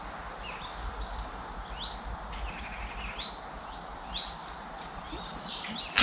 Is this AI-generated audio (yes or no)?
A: no